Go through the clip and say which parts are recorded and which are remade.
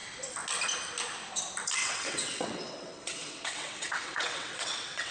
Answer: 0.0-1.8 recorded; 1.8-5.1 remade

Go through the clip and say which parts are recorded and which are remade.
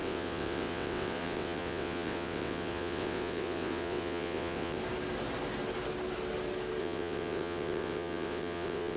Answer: 0.0-4.8 remade; 4.8-6.8 recorded; 6.8-9.0 remade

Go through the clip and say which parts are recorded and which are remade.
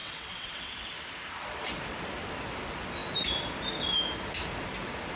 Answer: 0.0-0.7 remade; 0.7-5.2 recorded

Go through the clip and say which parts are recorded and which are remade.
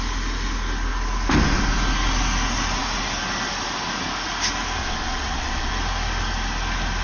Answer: 0.0-4.8 recorded; 4.8-5.7 remade; 5.7-7.0 recorded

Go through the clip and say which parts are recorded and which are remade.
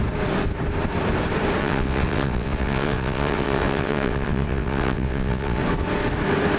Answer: 0.0-1.6 recorded; 1.6-5.6 remade; 5.6-6.6 recorded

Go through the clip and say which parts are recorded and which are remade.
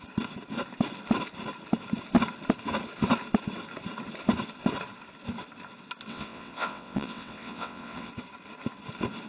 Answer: 0.0-6.1 recorded; 6.1-8.1 remade; 8.1-9.3 recorded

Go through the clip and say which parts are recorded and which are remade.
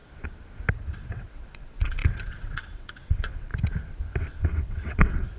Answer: 0.0-0.7 recorded; 0.7-3.5 remade; 3.5-4.4 recorded; 4.4-5.4 remade